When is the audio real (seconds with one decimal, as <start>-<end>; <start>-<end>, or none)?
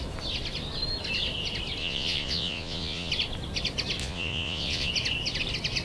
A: 0.0-1.8; 3.1-4.0; 4.9-5.8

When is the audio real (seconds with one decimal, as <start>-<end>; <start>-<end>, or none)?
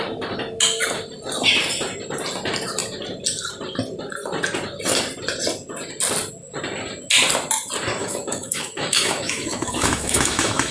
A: 0.0-8.0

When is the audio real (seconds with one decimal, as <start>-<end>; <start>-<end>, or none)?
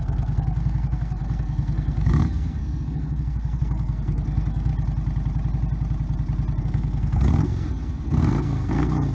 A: 4.7-6.6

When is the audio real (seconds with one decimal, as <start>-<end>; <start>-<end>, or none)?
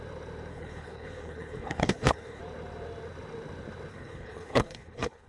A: 0.0-0.5; 2.4-3.9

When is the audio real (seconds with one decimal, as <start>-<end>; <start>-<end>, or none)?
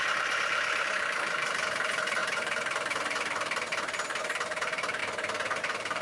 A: 5.0-5.6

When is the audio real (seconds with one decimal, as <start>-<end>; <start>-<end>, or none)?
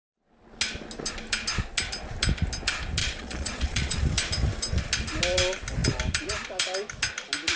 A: 0.0-3.0; 4.0-7.6